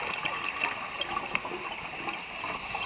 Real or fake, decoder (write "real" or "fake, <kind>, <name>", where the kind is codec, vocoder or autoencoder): real